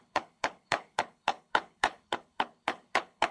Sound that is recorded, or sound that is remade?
remade